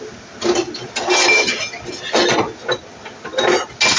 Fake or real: real